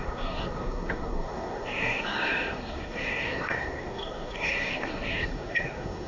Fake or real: fake